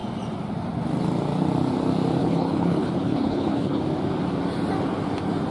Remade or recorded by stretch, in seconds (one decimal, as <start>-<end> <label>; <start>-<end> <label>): 0.0-2.2 recorded; 2.2-3.8 remade; 3.8-5.5 recorded